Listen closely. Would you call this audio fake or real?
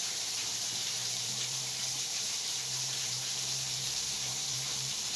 fake